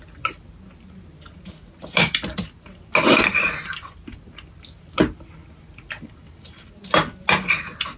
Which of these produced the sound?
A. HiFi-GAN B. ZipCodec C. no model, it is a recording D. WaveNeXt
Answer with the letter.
C